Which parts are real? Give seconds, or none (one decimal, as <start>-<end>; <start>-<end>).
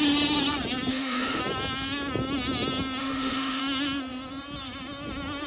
0.0-0.9; 1.4-3.0; 3.6-5.5